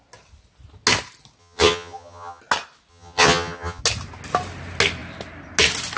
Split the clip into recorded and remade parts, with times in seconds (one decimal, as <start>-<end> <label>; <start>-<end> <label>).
0.0-1.4 recorded; 1.4-2.4 remade; 2.4-2.9 recorded; 2.9-3.8 remade; 3.8-6.0 recorded